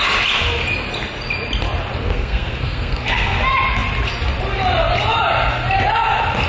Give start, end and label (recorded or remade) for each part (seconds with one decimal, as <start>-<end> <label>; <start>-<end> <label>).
0.0-2.0 recorded; 2.0-3.4 remade; 3.4-6.5 recorded

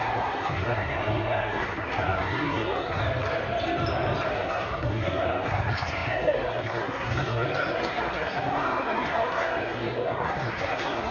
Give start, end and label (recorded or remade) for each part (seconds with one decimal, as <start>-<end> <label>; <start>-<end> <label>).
0.0-3.0 remade; 3.0-4.3 recorded; 4.3-11.1 remade

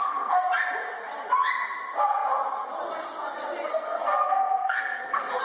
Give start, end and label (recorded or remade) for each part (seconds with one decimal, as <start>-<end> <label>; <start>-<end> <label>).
0.0-0.5 remade; 0.5-3.7 recorded; 3.7-5.4 remade